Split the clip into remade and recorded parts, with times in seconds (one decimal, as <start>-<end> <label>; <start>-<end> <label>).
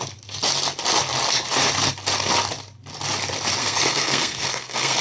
0.0-3.6 recorded; 3.6-5.0 remade